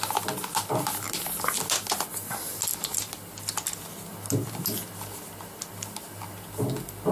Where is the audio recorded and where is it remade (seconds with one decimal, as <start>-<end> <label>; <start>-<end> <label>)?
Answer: 0.0-7.1 recorded